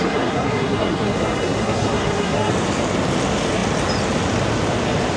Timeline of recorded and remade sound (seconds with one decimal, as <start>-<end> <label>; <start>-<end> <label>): 0.0-2.5 remade; 2.5-5.2 recorded